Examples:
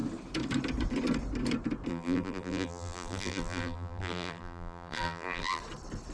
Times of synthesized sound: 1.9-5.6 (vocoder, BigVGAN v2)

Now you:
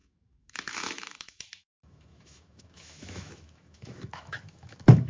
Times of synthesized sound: 0.0-5.1 (autoencoder, DAC-VAE)

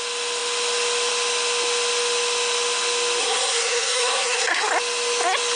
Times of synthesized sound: 3.2-4.7 (codec, SNAC)

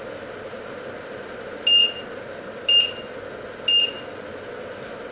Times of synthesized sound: none

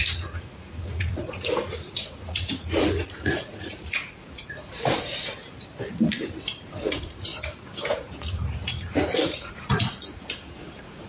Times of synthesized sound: 0.0-5.4 (vocoder, Vocos); 6.6-7.3; 7.9-11.1